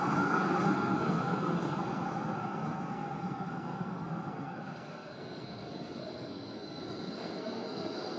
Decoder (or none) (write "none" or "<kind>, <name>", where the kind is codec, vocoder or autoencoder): codec, SNAC